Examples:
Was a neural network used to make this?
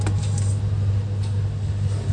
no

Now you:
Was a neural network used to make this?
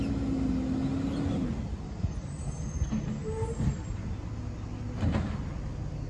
no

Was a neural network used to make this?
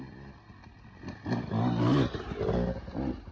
no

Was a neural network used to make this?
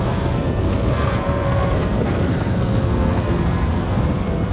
yes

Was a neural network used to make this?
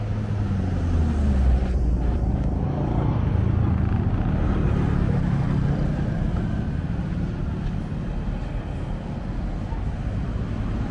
no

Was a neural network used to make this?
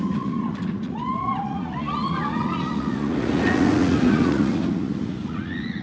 yes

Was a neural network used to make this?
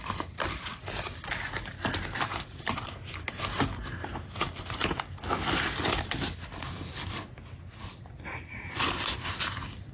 no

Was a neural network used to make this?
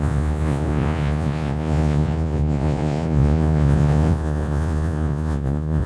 yes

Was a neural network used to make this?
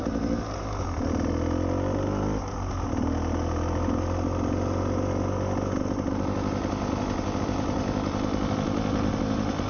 no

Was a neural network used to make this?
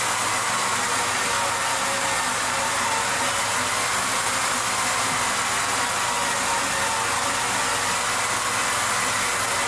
no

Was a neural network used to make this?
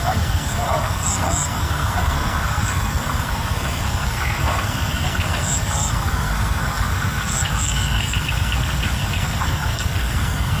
yes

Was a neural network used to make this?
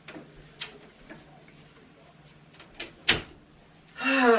no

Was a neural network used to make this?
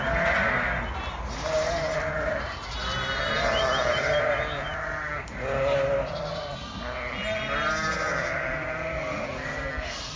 no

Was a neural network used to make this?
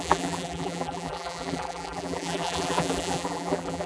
yes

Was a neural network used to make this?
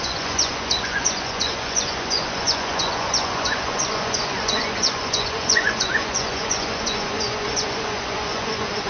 yes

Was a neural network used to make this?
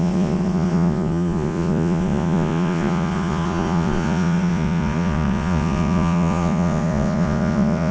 yes